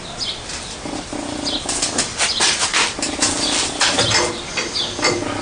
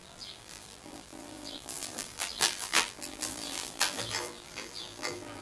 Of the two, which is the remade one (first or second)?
second